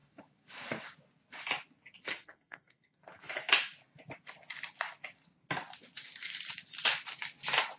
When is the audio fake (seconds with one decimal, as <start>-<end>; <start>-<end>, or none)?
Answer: 2.1-3.0